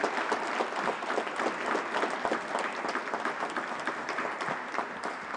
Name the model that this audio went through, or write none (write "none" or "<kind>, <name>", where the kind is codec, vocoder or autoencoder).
none